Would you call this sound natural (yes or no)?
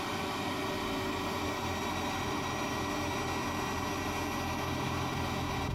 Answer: yes